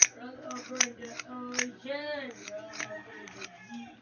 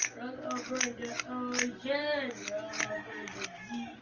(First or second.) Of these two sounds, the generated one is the first